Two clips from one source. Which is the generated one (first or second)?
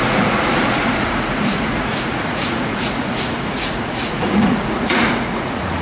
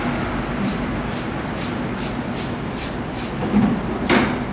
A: first